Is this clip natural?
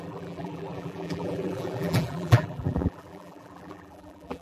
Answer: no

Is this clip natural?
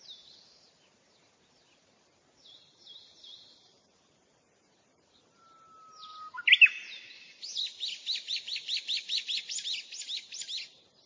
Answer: yes